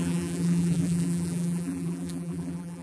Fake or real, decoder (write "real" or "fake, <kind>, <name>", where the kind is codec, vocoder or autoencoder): fake, vocoder, BigVGAN v2